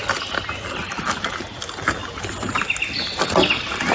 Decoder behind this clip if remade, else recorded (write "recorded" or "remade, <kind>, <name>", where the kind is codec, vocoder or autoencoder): recorded